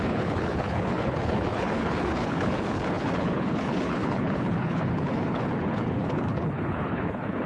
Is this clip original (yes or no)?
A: no